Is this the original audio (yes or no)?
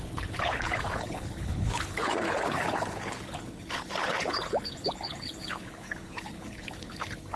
no